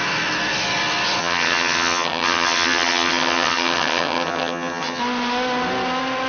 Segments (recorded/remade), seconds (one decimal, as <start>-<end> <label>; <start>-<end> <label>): 0.0-1.2 recorded; 1.2-5.0 remade; 5.0-6.3 recorded

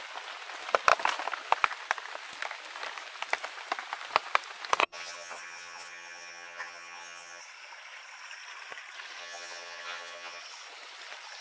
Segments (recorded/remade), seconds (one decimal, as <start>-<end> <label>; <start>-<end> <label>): 0.0-4.8 recorded; 4.8-7.4 remade; 7.4-9.2 recorded; 9.2-10.4 remade; 10.4-11.4 recorded

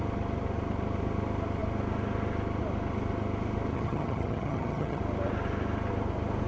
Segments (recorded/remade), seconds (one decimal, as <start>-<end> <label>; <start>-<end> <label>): 0.0-3.7 recorded; 3.7-5.0 remade; 5.0-6.5 recorded

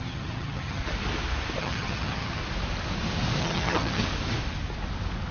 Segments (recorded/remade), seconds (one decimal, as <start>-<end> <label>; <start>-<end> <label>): 0.0-0.8 remade; 0.8-1.6 recorded; 1.6-2.4 remade; 2.4-3.4 recorded; 3.4-4.0 remade; 4.0-5.3 recorded

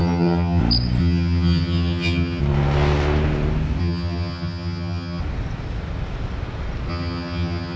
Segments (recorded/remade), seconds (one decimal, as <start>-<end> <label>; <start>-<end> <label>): 0.0-0.6 remade; 0.6-1.0 recorded; 1.0-2.4 remade; 2.4-3.8 recorded; 3.8-5.2 remade; 5.2-6.9 recorded; 6.9-7.8 remade

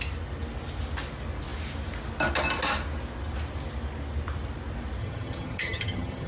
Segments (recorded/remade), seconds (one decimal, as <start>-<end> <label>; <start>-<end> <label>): 0.0-5.0 recorded; 5.0-6.3 remade

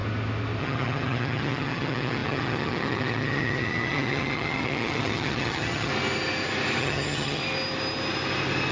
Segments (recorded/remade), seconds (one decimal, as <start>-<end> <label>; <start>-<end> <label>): 0.0-0.6 recorded; 0.6-5.9 remade; 5.9-6.8 recorded; 6.8-7.4 remade; 7.4-8.7 recorded